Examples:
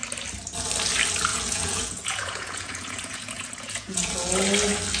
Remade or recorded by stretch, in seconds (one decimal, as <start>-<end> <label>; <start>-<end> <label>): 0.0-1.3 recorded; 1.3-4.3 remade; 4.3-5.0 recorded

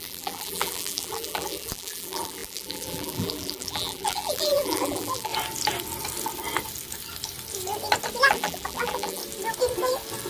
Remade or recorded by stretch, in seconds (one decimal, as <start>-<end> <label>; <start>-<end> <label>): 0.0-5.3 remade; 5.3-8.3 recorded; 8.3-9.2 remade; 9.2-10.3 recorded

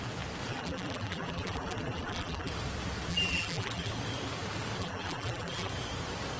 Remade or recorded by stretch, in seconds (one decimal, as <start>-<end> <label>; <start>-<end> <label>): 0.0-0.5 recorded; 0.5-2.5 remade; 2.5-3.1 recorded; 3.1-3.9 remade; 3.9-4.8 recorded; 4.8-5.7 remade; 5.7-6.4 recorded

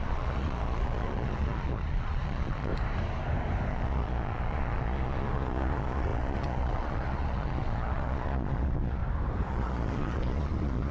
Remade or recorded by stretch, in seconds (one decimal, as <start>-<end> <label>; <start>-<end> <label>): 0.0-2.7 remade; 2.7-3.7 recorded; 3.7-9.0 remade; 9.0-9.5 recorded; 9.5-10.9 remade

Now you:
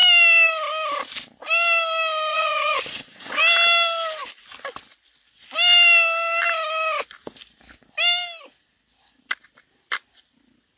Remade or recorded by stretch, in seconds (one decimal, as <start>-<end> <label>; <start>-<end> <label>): 0.0-2.3 recorded; 2.3-3.4 remade; 3.4-10.8 recorded

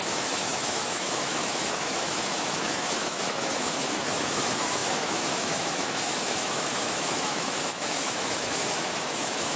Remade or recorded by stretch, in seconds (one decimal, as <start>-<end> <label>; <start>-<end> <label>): 0.0-9.6 remade